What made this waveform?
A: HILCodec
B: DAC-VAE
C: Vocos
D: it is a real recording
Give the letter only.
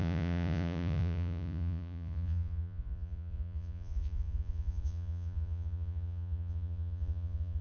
C